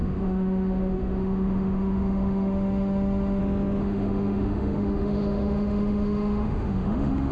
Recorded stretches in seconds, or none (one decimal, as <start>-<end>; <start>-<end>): 3.4-3.8